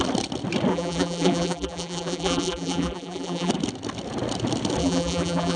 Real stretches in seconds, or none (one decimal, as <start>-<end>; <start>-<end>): 0.0-0.7; 3.5-4.8